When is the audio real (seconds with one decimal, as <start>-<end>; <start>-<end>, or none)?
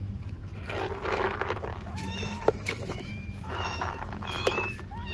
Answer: 0.5-1.1